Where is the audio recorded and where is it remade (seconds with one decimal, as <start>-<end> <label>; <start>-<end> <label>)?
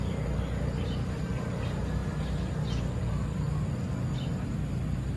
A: 0.0-5.2 recorded